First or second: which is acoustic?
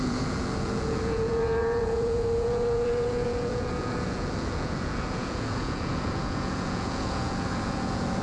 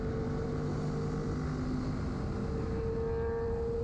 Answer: second